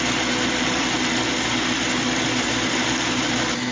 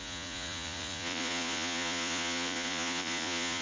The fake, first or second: second